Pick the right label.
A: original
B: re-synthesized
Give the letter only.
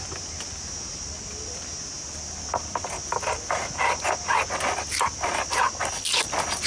A